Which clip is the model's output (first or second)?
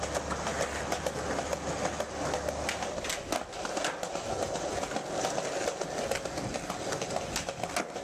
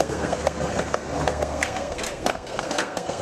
second